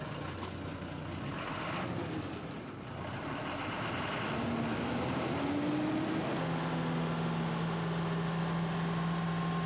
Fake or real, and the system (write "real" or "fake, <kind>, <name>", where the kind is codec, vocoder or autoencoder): real